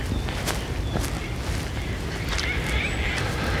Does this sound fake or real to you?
real